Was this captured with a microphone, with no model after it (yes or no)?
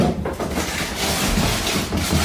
yes